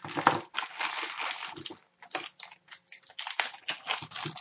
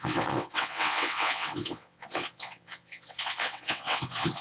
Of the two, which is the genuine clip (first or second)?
first